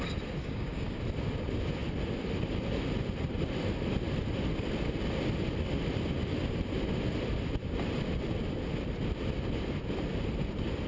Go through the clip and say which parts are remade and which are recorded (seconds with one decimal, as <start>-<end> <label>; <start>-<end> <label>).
0.0-0.4 recorded; 0.4-1.0 remade; 1.0-10.9 recorded

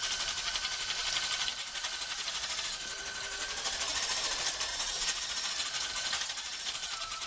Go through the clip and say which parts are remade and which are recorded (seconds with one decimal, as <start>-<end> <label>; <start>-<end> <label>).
0.0-1.5 recorded; 1.5-3.0 remade; 3.0-4.7 recorded; 4.7-5.9 remade; 5.9-7.3 recorded